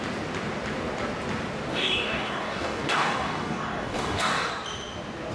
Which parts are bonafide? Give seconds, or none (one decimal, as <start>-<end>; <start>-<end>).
0.0-1.7; 4.5-5.3